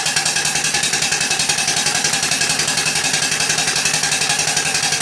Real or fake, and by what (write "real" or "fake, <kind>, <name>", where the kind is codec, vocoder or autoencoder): real